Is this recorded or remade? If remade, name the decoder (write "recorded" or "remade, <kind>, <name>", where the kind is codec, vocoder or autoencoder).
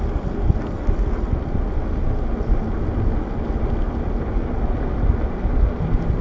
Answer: recorded